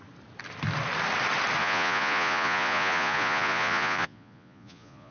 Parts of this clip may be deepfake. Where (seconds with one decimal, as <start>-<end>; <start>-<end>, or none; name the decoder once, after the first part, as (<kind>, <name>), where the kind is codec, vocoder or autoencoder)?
1.6-5.1 (vocoder, Vocos)